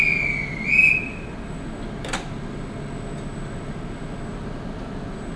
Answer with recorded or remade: recorded